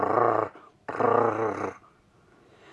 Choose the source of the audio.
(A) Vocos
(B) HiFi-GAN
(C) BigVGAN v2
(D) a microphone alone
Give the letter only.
D